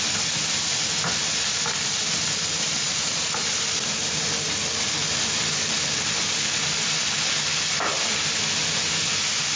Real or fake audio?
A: real